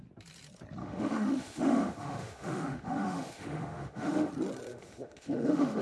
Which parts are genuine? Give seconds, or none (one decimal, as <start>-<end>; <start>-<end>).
0.0-0.8; 4.3-4.7